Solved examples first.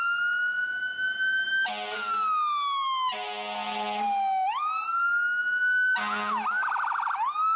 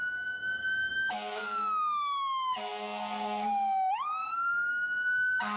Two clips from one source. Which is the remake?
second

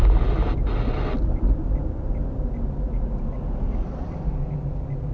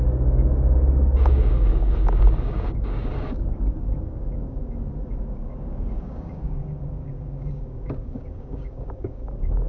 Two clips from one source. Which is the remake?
second